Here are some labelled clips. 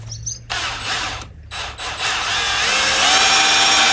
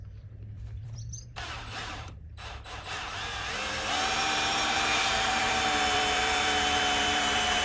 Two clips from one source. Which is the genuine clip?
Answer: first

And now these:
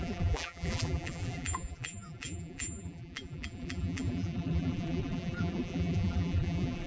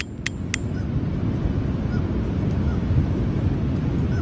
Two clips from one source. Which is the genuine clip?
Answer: second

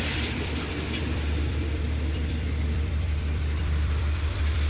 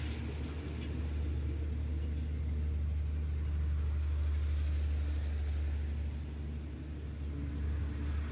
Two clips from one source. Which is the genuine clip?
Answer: second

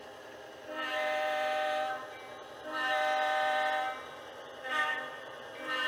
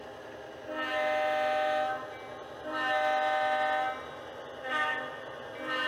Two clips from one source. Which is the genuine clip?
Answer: second